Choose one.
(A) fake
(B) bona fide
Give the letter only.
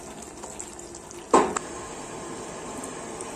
B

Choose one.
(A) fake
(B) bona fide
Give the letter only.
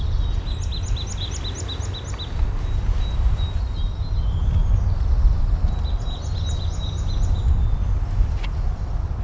B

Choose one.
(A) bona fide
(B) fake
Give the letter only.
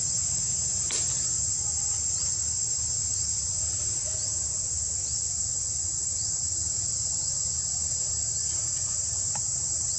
A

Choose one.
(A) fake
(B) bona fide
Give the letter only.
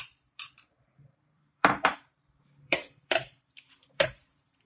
A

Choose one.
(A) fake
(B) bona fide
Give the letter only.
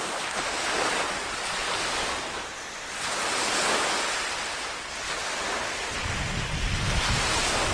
B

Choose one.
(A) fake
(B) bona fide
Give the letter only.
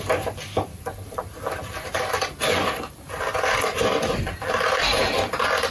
A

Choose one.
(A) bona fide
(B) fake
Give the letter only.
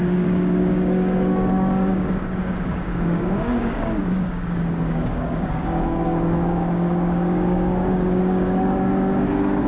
B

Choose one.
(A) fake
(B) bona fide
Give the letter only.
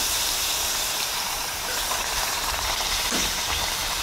A